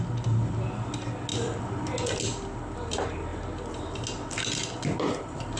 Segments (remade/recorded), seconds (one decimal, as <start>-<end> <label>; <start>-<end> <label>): 0.0-5.6 recorded